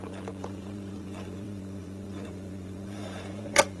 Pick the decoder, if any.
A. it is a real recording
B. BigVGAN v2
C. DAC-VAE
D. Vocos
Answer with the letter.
D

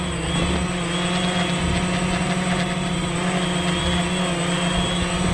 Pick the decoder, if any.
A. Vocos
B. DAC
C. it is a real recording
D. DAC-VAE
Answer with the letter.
C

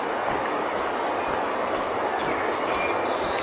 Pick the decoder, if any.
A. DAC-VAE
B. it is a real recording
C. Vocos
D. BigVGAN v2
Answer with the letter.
B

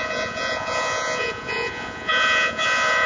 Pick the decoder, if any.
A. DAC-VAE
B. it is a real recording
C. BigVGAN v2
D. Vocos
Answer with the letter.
D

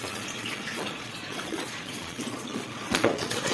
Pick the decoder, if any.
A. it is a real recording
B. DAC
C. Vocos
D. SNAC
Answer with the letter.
C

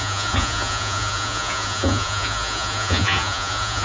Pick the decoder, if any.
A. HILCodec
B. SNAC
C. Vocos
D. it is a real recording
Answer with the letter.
C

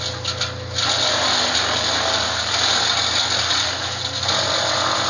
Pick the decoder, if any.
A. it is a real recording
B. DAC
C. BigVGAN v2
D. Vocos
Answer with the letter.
A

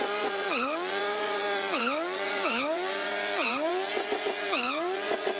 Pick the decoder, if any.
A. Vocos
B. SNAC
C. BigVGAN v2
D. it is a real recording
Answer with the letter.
A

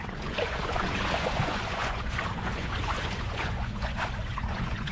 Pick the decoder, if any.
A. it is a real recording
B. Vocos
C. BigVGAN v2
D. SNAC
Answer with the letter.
B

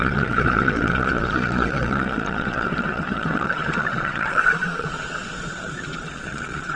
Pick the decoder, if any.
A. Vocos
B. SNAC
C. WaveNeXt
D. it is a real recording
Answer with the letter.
A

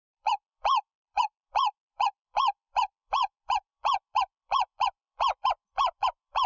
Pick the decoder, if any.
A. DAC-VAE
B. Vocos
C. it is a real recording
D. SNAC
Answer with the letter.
B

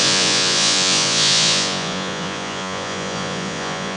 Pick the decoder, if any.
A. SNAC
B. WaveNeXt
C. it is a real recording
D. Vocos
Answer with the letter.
D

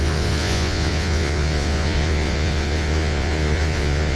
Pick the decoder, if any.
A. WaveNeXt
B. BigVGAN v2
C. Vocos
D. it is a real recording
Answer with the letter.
C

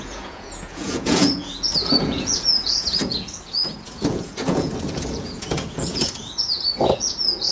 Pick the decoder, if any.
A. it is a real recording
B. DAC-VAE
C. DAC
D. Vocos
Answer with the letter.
D